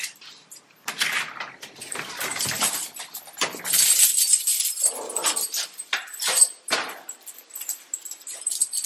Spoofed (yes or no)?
yes